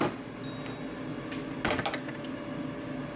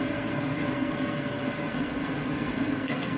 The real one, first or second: first